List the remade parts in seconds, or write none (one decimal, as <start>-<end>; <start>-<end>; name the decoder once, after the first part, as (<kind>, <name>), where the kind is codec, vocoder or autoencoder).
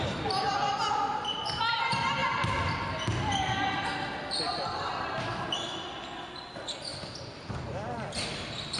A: 6.9-7.7 (vocoder, BigVGAN v2)